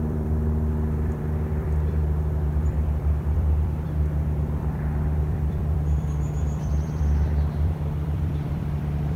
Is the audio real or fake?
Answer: fake